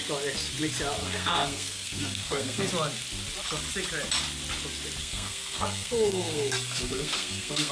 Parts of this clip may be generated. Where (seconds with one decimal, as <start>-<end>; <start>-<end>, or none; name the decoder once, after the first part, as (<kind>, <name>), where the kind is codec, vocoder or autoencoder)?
1.0-2.7 (codec, SNAC); 5.0-7.7

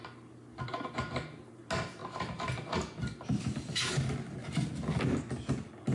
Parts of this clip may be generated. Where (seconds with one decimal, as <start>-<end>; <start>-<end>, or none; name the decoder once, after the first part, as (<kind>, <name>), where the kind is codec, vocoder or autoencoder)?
none

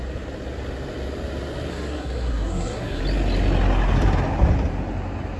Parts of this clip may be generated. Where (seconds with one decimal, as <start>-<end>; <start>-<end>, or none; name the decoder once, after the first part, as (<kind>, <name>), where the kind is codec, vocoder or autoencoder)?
1.7-3.0 (codec, SNAC)

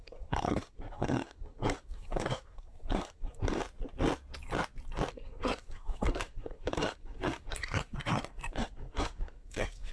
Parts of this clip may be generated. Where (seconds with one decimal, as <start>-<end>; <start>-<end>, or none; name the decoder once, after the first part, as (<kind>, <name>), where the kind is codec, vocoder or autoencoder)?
0.0-3.6 (codec, SNAC); 5.1-9.9

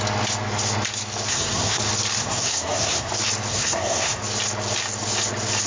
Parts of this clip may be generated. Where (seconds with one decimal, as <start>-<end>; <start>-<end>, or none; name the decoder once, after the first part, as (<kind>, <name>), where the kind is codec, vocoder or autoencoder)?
1.3-1.8 (codec, SNAC); 2.2-3.1; 3.5-4.2

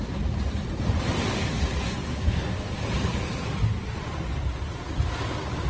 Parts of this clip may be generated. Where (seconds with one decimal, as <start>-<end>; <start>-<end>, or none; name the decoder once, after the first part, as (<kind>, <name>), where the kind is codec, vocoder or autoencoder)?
2.1-2.7 (codec, SNAC)